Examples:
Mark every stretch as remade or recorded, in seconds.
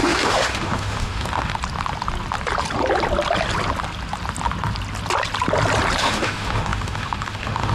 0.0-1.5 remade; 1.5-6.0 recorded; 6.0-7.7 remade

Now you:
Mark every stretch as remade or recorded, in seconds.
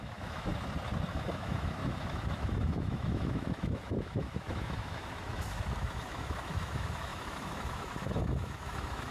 0.0-0.5 remade; 0.5-1.1 recorded; 1.1-9.1 remade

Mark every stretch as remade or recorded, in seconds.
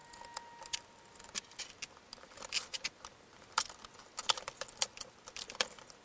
0.0-6.0 recorded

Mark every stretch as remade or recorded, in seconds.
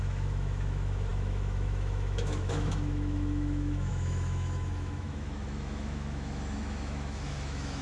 0.0-7.8 remade